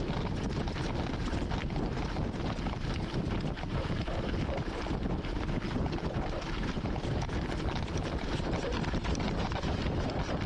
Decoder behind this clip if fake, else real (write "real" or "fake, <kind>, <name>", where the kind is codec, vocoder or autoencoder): real